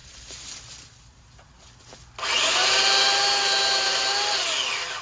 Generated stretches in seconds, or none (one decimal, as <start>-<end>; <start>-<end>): 0.0-0.5

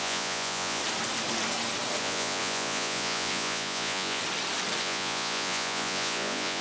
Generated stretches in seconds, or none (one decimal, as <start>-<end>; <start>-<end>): 0.0-0.8; 2.0-4.2; 4.8-6.6